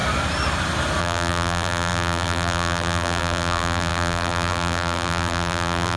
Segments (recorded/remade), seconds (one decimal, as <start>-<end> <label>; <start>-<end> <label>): 0.0-1.0 recorded; 1.0-6.0 remade